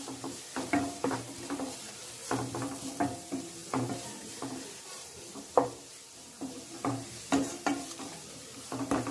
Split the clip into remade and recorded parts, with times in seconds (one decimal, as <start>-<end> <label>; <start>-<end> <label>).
0.0-2.2 remade; 2.2-3.0 recorded; 3.0-9.1 remade